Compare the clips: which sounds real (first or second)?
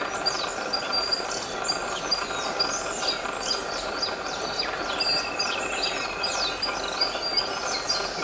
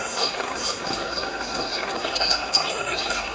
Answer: first